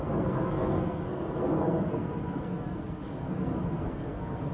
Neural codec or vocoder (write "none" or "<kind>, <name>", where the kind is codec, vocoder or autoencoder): codec, SNAC